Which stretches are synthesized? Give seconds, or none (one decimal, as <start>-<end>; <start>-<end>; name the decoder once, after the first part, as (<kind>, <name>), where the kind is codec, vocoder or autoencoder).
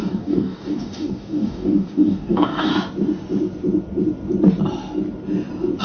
0.0-2.7 (codec, DAC)